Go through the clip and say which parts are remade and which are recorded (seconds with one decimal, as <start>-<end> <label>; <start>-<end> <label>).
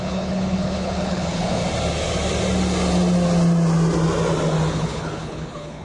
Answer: 0.0-1.6 remade; 1.6-4.7 recorded; 4.7-5.8 remade